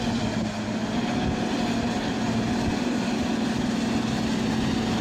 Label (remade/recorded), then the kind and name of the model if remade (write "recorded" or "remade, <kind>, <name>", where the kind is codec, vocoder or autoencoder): recorded